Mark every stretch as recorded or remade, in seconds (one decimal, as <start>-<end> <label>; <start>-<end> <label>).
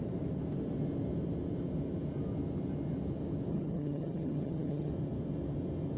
0.0-3.5 recorded; 3.5-4.9 remade; 4.9-6.0 recorded